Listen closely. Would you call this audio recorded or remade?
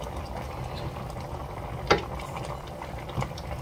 recorded